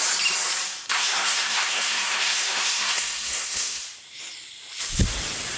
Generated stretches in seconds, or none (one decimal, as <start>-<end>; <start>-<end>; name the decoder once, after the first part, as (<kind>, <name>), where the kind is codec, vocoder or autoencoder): 0.9-3.8 (codec, SNAC)